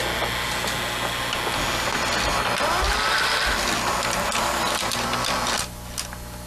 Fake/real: real